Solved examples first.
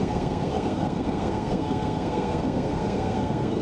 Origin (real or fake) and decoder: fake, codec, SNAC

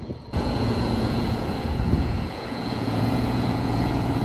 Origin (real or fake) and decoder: fake, vocoder, Vocos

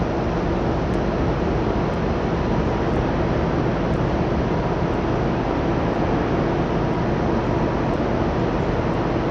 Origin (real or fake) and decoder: real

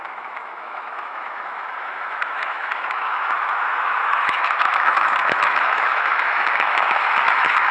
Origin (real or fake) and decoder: fake, autoencoder, DAC-VAE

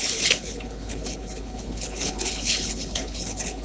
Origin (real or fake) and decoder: fake, codec, HILCodec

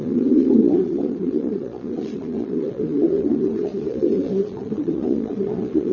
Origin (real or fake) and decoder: fake, vocoder, Vocos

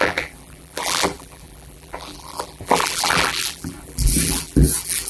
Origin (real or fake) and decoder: fake, vocoder, BigVGAN v2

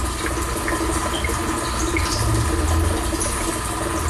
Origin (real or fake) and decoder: real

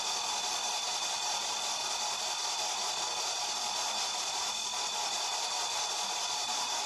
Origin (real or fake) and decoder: real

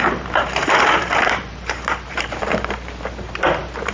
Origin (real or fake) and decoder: fake, vocoder, BigVGAN v2